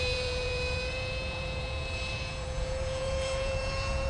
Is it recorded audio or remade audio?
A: remade